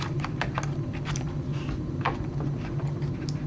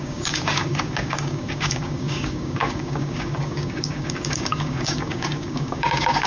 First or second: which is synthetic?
second